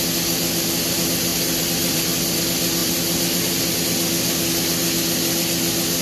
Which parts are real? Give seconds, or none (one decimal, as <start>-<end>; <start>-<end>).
0.0-1.3; 2.4-2.8; 3.6-6.0